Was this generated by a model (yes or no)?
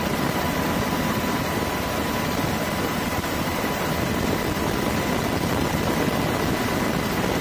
no